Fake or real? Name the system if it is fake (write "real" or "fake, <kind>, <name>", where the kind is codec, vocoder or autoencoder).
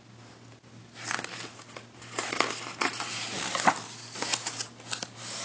real